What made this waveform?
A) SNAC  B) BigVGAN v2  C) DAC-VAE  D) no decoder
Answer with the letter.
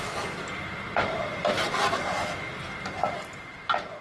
D